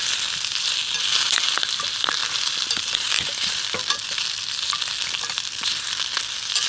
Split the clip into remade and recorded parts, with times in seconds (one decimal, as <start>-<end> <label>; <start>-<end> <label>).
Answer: 0.0-2.2 recorded; 2.2-6.0 remade; 6.0-6.7 recorded